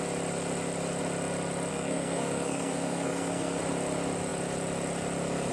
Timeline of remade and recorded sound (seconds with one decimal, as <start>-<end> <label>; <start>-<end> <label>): 0.0-1.7 recorded; 1.7-3.6 remade; 3.6-5.5 recorded